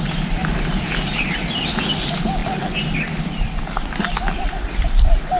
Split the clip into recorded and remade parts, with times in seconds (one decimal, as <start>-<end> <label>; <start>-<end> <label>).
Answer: 0.0-0.4 recorded; 0.4-1.5 remade; 1.5-5.4 recorded